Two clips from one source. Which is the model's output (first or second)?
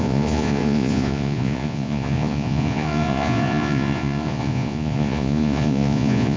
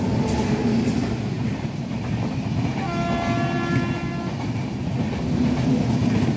first